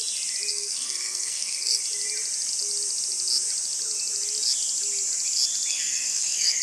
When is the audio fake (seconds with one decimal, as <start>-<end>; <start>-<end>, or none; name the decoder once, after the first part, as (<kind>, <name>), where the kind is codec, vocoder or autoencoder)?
0.5-1.8 (codec, SNAC); 5.7-6.6